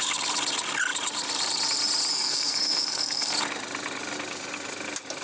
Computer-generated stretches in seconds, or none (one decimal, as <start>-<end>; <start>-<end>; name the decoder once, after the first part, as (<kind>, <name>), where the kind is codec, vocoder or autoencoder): 2.1-3.3 (codec, SNAC)